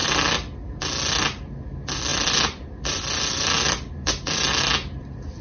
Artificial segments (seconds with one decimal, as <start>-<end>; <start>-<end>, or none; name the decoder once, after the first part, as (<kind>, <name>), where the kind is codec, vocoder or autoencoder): 0.0-0.8 (vocoder, BigVGAN v2); 2.1-5.4